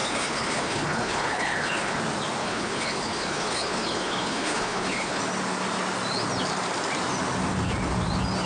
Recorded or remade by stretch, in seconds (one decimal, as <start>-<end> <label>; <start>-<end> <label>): 0.0-2.0 remade; 2.0-2.4 recorded; 2.4-5.2 remade; 5.2-8.5 recorded